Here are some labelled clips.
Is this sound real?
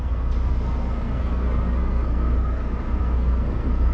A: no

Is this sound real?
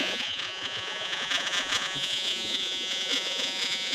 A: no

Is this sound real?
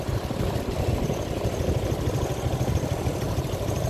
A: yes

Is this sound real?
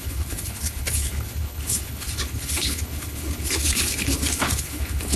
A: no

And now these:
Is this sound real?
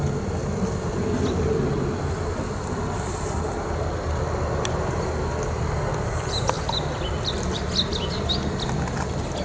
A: yes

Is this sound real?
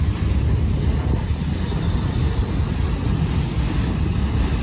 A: yes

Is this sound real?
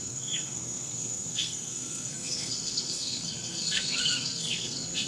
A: no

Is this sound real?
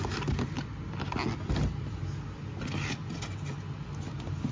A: yes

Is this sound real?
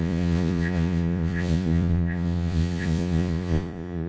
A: no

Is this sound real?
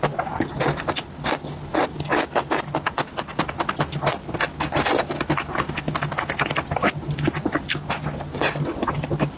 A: yes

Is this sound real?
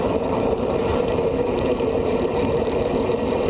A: no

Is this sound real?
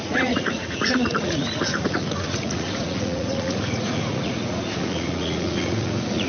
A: no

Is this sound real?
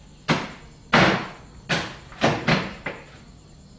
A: yes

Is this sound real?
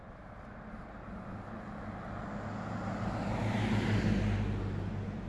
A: yes